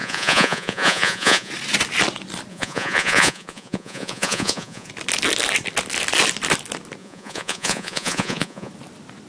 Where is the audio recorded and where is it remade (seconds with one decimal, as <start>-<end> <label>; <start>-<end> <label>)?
0.0-1.5 remade; 1.5-2.5 recorded; 2.5-4.9 remade; 4.9-7.0 recorded; 7.0-8.7 remade; 8.7-9.3 recorded